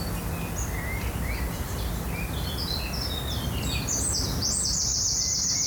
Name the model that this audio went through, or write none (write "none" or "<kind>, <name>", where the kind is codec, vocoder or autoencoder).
none